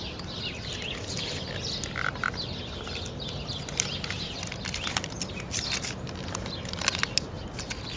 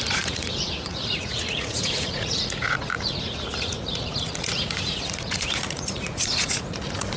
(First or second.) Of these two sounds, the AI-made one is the second